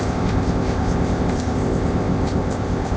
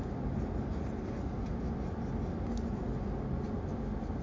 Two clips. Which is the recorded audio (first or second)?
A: second